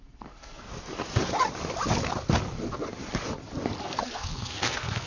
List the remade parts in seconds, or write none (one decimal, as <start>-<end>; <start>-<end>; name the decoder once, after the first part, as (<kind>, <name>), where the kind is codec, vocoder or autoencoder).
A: 0.0-0.7 (codec, SNAC); 3.8-5.1